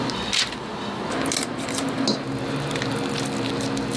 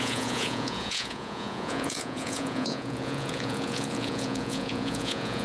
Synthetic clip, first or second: second